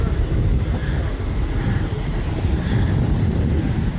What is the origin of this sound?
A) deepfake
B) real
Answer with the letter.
B